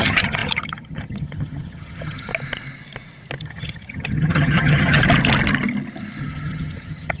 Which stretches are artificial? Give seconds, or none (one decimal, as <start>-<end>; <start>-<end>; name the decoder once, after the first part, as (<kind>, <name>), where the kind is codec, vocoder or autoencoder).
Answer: 0.0-2.3 (vocoder, HiFi-GAN); 3.4-5.0; 6.2-7.2